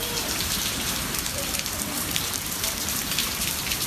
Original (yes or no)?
no